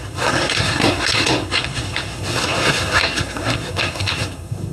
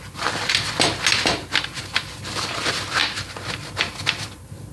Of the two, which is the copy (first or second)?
first